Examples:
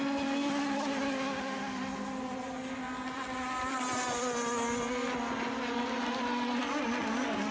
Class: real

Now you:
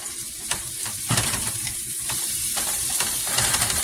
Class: fake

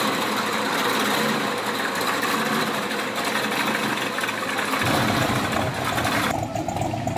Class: real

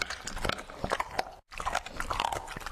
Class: real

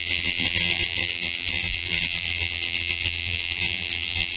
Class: fake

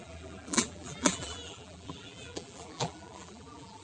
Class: fake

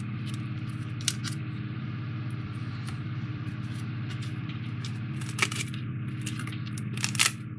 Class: fake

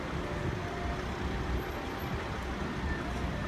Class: real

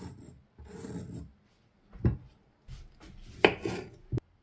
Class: real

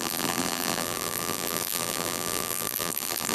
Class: fake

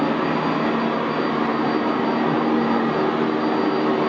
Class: real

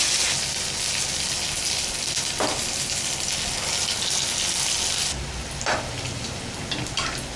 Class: real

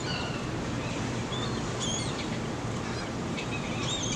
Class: fake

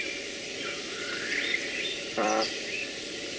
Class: fake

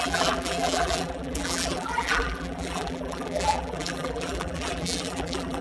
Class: fake